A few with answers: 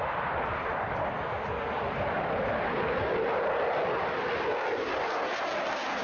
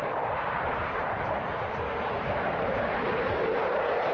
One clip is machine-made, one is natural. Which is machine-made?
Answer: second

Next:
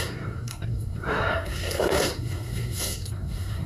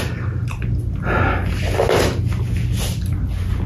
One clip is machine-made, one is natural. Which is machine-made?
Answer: first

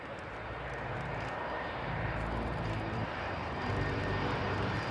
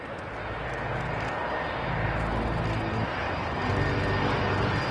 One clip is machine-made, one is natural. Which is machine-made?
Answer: first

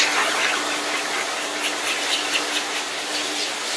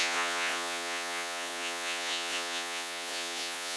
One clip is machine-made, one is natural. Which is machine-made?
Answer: second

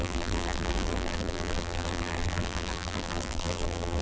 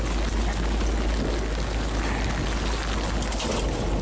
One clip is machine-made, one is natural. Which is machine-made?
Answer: first